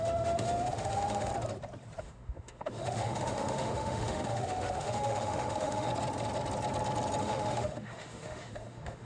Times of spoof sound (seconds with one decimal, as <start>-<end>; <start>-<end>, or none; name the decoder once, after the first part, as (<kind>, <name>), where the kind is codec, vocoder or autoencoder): 0.0-1.3 (autoencoder, DAC-VAE); 2.0-5.9; 7.2-9.1